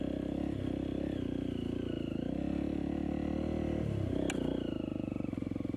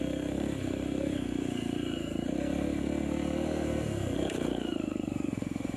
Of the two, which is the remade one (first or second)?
second